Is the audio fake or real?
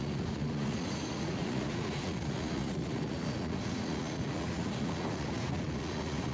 fake